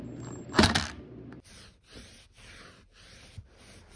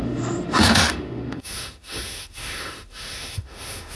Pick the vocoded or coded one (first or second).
second